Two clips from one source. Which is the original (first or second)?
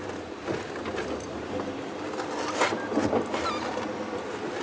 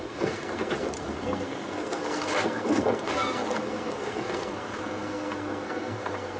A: first